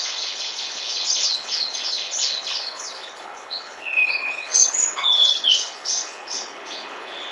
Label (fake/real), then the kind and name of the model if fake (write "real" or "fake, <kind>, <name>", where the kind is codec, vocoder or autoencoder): fake, codec, HILCodec